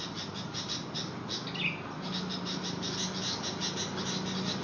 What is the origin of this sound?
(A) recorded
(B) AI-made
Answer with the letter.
A